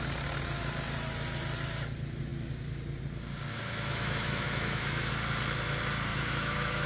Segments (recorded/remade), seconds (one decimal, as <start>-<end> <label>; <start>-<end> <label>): 0.0-3.5 recorded; 3.5-5.1 remade; 5.1-6.1 recorded; 6.1-6.9 remade